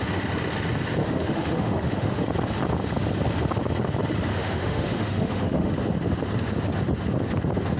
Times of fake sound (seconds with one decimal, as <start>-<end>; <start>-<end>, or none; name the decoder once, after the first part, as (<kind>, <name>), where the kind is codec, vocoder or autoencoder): 1.0-2.2 (autoencoder, DAC-VAE); 4.3-5.7